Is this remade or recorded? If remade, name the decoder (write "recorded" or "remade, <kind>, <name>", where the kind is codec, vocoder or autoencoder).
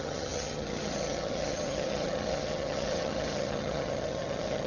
remade, vocoder, HiFi-GAN